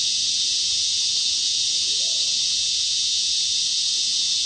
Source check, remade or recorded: remade